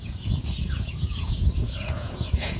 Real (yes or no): no